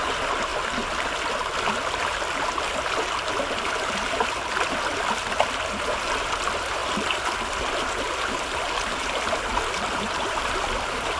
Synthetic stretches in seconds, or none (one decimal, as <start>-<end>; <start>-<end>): none